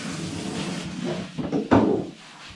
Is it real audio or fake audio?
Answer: real